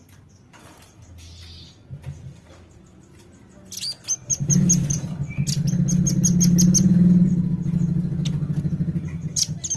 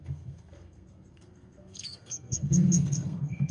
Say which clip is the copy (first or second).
second